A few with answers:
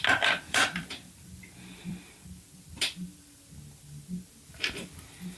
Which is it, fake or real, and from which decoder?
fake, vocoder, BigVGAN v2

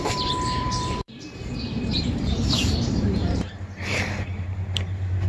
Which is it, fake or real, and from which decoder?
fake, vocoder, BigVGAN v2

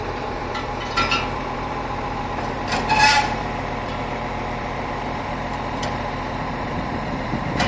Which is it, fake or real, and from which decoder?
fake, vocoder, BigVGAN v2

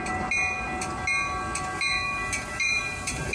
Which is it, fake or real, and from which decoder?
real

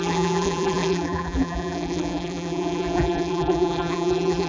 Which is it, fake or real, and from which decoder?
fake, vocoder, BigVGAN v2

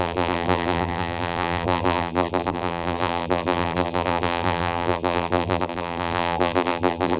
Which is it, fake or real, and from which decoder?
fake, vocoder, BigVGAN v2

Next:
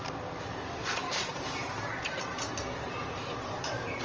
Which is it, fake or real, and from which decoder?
fake, vocoder, BigVGAN v2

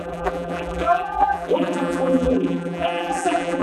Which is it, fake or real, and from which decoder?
fake, vocoder, BigVGAN v2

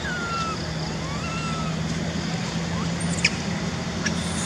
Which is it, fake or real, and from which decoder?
real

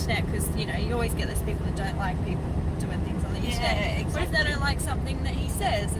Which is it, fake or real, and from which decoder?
real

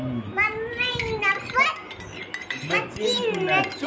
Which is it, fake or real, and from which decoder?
real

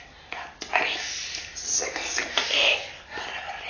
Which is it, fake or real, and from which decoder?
real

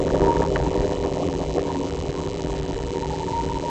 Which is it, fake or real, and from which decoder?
fake, vocoder, BigVGAN v2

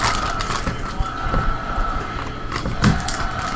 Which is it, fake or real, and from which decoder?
fake, vocoder, BigVGAN v2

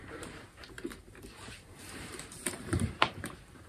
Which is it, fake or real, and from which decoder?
fake, vocoder, BigVGAN v2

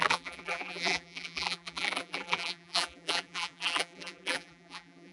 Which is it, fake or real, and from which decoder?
fake, vocoder, BigVGAN v2